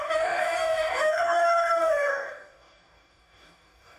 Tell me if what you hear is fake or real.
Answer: fake